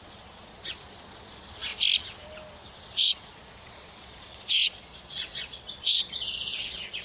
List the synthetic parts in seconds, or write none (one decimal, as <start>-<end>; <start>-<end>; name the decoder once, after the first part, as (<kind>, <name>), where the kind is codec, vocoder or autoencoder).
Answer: 0.0-1.7 (vocoder, Vocos); 2.8-7.0